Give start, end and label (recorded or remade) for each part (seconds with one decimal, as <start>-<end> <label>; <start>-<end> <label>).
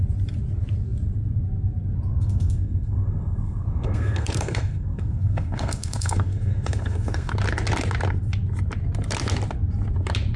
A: 0.0-2.1 recorded; 2.1-7.3 remade; 7.3-10.4 recorded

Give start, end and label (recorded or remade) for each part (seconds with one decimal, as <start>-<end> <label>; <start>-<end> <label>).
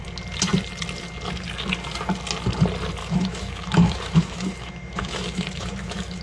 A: 0.0-3.0 recorded; 3.0-6.2 remade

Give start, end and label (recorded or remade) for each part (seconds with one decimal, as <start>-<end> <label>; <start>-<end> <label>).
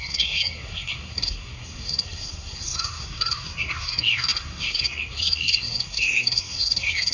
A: 0.0-7.1 remade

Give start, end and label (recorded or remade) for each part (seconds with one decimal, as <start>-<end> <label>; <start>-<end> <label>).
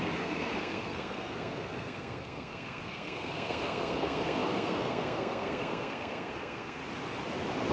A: 0.0-6.8 remade; 6.8-7.7 recorded